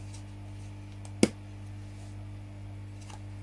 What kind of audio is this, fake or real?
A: real